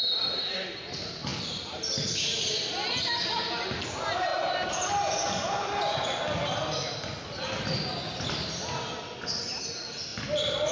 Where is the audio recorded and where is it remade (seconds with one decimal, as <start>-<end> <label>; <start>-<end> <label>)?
0.0-10.7 recorded